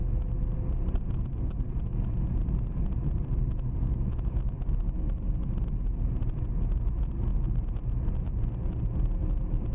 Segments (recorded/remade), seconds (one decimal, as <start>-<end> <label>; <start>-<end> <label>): 0.0-9.7 recorded